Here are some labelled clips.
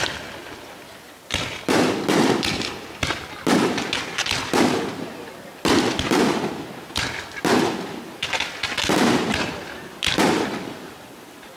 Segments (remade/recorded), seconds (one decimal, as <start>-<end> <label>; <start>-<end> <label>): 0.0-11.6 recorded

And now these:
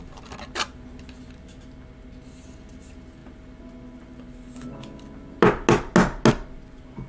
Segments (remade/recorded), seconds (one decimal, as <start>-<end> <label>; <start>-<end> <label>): 0.0-7.1 recorded

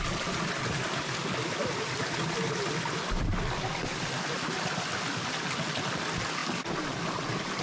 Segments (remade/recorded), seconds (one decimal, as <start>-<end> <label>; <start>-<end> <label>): 0.0-7.6 recorded

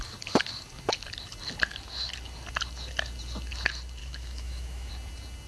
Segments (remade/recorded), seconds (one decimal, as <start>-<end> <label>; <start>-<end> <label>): 0.0-4.0 recorded; 4.0-4.9 remade; 4.9-5.5 recorded